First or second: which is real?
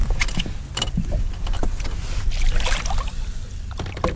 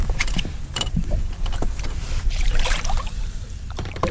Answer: first